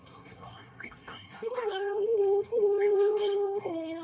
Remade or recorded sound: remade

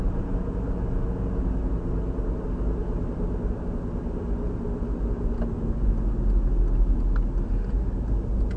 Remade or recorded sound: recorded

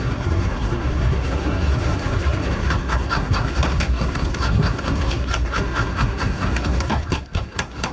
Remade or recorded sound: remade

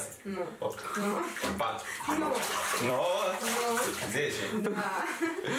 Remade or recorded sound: remade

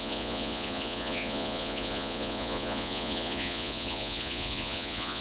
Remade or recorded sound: remade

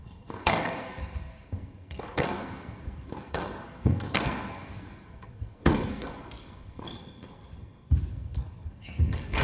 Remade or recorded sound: remade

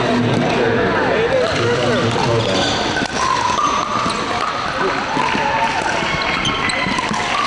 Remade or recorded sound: recorded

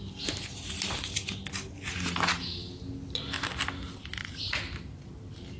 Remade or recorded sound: recorded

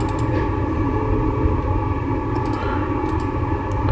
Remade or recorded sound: recorded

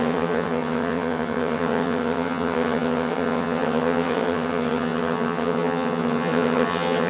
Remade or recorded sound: remade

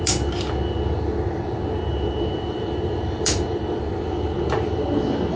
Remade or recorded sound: remade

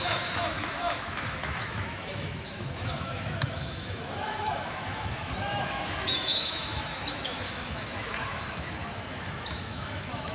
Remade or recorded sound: remade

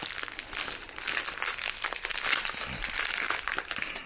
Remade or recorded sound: recorded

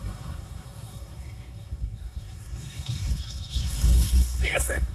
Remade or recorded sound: remade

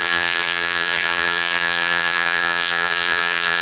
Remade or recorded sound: remade